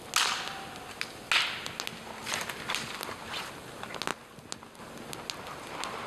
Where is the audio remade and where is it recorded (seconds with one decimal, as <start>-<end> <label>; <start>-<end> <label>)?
0.0-6.1 recorded